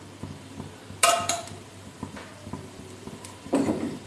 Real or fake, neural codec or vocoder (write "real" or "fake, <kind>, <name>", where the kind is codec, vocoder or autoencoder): fake, vocoder, BigVGAN v2